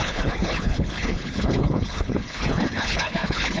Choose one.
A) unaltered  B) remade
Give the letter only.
B